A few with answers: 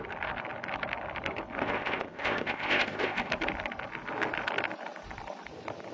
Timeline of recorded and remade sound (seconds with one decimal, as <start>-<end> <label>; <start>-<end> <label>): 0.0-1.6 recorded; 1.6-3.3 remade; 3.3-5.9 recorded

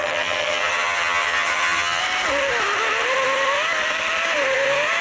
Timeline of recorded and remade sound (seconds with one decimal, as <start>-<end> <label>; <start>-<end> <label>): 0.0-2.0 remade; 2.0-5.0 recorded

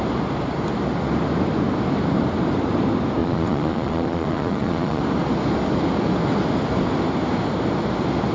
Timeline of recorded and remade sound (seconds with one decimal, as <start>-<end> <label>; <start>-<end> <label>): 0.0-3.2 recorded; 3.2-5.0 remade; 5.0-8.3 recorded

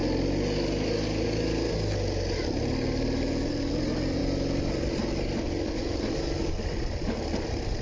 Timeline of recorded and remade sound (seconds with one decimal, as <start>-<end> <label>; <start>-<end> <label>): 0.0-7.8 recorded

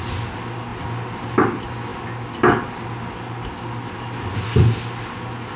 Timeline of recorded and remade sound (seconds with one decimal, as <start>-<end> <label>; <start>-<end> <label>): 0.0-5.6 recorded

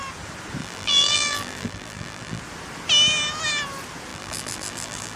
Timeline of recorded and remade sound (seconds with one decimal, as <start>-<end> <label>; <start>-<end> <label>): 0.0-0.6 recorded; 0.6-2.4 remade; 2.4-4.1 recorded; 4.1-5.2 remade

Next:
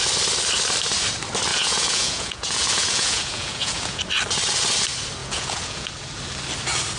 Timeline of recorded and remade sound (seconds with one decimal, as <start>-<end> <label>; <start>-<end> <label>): 0.0-1.5 recorded; 1.5-4.0 remade; 4.0-5.2 recorded; 5.2-5.9 remade; 5.9-7.0 recorded

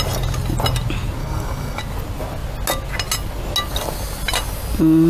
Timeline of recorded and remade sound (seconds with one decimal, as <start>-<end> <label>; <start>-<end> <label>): 0.0-1.2 recorded; 1.2-1.8 remade; 1.8-5.1 recorded